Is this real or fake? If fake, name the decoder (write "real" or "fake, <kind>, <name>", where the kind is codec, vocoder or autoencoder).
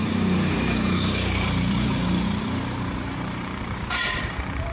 fake, vocoder, BigVGAN v2